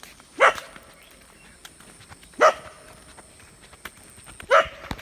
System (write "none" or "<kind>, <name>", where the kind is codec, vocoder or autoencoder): none